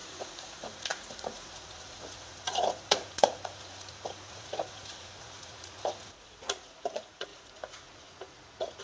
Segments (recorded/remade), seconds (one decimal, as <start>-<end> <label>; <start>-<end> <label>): 0.0-8.8 remade